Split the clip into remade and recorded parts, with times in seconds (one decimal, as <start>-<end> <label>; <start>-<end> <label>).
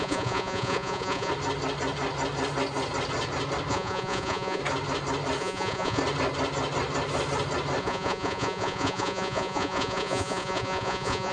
0.0-1.3 remade; 1.3-3.7 recorded; 3.7-4.6 remade; 4.6-5.4 recorded; 5.4-6.0 remade; 6.0-7.8 recorded; 7.8-11.3 remade